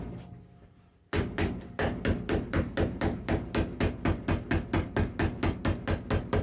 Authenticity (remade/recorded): recorded